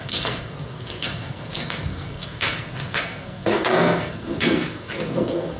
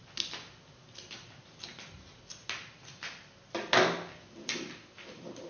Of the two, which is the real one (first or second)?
second